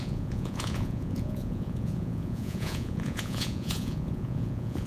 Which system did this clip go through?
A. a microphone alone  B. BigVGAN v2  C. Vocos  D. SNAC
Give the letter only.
C